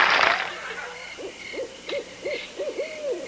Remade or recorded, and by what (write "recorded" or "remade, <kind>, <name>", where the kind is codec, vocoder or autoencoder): remade, vocoder, BigVGAN v2